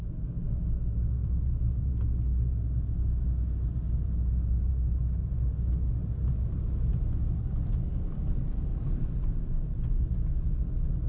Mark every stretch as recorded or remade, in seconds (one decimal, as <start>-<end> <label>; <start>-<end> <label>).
0.0-1.2 recorded; 1.2-1.9 remade; 1.9-8.7 recorded; 8.7-9.3 remade; 9.3-11.1 recorded